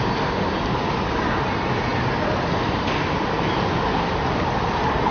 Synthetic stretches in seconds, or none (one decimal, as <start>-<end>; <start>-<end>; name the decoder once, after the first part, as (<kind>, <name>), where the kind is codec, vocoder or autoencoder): none

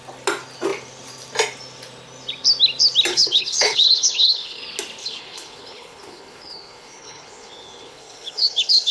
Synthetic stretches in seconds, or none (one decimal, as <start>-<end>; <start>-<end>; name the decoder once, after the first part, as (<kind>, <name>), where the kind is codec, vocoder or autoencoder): 3.1-4.6 (codec, HILCodec); 5.0-8.9

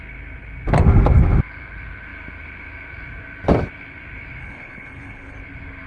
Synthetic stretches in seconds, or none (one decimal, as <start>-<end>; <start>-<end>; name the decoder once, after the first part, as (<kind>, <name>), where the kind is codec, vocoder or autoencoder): 4.4-5.4 (codec, HILCodec)

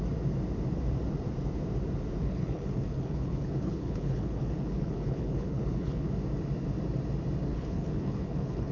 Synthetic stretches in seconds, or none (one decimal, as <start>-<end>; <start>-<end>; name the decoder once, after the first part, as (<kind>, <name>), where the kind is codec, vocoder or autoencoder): 2.2-6.1 (codec, HILCodec); 7.5-8.7